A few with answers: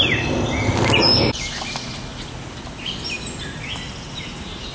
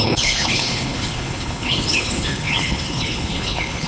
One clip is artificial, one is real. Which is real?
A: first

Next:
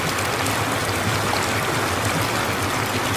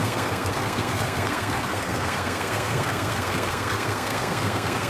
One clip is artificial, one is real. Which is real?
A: first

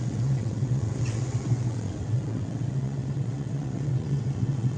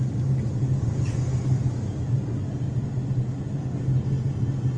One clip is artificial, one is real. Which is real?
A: second